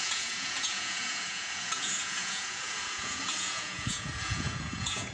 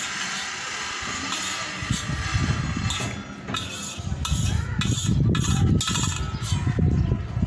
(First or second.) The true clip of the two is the second